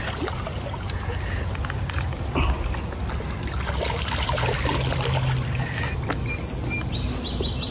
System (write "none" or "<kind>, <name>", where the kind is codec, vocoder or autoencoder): none